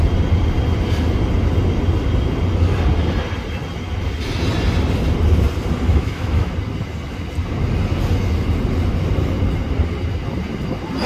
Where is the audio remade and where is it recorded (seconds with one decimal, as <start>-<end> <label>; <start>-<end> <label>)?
0.0-5.9 recorded; 5.9-6.5 remade; 6.5-11.1 recorded